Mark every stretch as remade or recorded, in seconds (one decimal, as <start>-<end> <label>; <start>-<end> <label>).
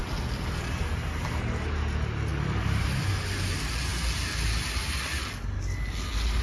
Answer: 0.0-0.8 remade; 0.8-2.3 recorded; 2.3-3.1 remade; 3.1-6.4 recorded